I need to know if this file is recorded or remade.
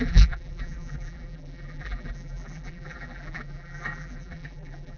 remade